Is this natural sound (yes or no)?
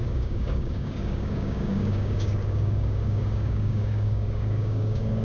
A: no